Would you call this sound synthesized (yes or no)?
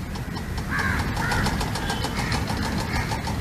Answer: no